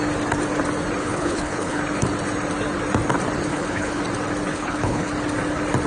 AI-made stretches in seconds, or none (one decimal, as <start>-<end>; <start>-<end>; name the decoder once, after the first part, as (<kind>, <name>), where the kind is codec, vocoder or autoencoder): 1.0-1.8 (codec, HILCodec); 3.5-4.0; 4.5-5.1